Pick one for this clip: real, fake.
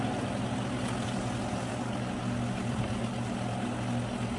real